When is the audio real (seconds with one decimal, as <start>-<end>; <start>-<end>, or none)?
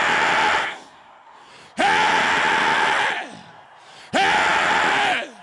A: 0.0-0.6; 1.5-5.4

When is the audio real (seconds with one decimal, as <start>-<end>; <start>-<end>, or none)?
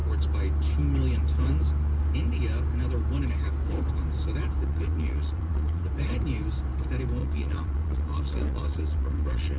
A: 0.0-4.6; 5.9-7.2